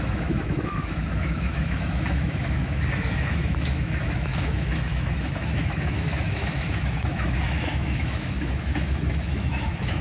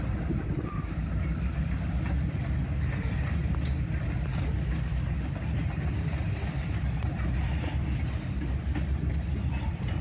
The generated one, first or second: first